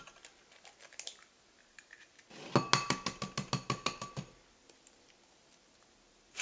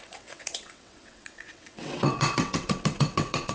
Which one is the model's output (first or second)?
second